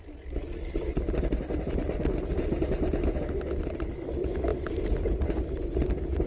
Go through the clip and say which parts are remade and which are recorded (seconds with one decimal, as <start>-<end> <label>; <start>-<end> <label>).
0.0-6.3 recorded